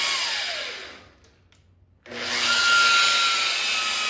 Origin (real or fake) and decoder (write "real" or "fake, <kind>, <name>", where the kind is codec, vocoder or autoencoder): real